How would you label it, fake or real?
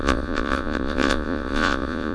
fake